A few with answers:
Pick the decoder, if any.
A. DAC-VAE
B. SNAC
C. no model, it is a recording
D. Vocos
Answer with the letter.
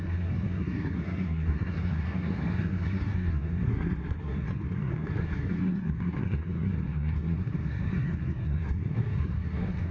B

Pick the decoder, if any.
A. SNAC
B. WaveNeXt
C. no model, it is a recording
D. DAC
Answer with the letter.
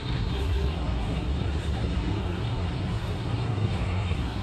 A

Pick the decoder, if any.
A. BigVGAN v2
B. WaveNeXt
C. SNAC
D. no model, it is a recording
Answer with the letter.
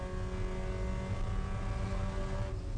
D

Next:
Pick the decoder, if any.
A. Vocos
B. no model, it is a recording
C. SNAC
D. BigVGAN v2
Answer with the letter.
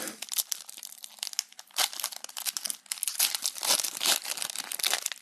B